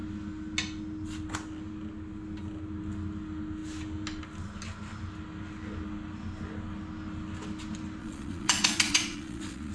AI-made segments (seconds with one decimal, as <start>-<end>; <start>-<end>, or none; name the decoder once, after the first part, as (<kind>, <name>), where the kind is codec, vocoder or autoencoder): 8.0-9.7 (vocoder, Vocos)